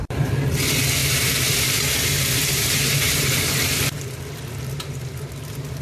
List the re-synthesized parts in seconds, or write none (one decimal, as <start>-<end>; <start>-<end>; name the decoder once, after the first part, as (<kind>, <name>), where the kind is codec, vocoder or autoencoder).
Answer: 1.0-4.2 (vocoder, BigVGAN v2)

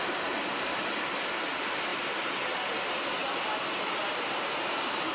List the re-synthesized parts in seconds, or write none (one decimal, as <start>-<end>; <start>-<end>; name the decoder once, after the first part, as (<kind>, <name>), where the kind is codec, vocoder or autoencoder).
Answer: none